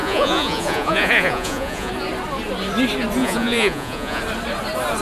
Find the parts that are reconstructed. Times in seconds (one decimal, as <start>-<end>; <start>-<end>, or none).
0.0-1.9; 3.2-4.2